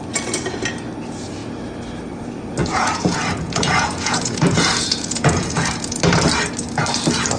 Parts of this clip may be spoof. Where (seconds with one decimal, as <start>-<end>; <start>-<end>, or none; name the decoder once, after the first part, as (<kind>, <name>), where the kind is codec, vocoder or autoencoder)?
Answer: 2.6-6.0 (vocoder, Vocos)